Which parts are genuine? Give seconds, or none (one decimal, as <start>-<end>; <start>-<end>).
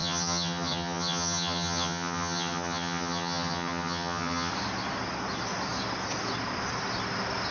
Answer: 4.5-7.5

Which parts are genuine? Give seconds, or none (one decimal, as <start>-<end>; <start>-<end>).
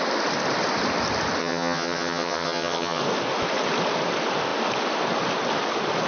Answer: 0.0-1.4; 3.0-6.1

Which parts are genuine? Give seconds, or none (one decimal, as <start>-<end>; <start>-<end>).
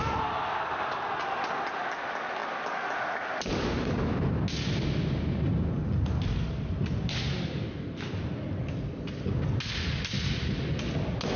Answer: 0.0-11.4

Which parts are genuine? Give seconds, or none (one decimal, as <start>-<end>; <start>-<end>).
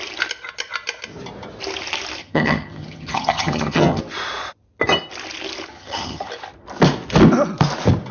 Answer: 0.0-2.2; 4.0-5.7; 6.3-8.1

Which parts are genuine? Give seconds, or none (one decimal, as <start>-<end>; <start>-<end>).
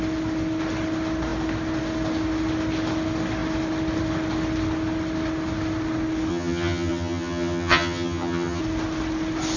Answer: 0.0-6.3; 8.6-9.6